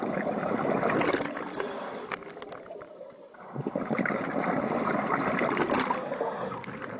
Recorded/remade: recorded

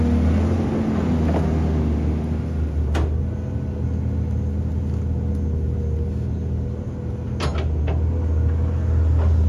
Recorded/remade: recorded